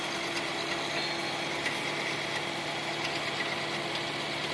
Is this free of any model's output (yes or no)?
yes